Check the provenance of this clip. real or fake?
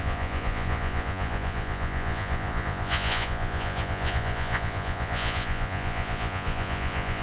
fake